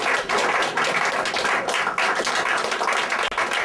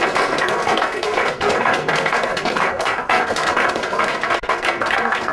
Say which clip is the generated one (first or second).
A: second